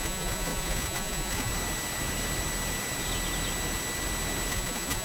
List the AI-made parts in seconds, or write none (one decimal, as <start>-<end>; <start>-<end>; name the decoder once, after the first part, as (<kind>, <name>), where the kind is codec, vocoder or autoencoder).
0.0-1.5 (vocoder, Vocos); 4.5-5.0